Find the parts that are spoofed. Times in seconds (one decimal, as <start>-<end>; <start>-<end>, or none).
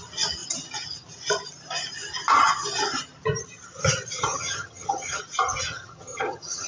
4.2-5.2; 5.7-6.7